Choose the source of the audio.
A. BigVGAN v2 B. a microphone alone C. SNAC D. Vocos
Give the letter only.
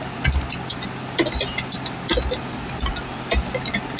B